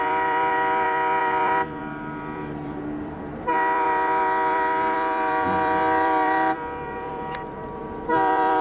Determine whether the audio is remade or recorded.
remade